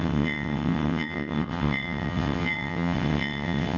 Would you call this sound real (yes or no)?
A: no